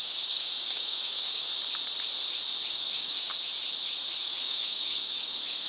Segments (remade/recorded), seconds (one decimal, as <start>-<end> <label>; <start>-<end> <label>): 0.0-1.5 remade; 1.5-2.7 recorded; 2.7-3.3 remade; 3.3-4.4 recorded; 4.4-5.7 remade